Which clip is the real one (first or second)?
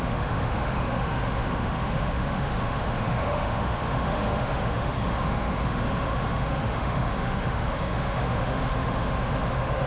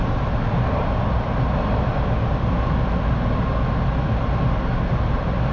second